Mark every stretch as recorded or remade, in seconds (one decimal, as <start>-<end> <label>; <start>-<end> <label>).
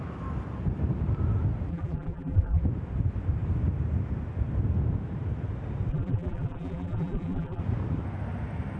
0.0-1.7 recorded; 1.7-2.6 remade; 2.6-5.9 recorded; 5.9-7.6 remade; 7.6-8.8 recorded